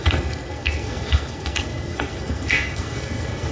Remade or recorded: remade